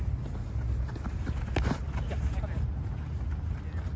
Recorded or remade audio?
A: recorded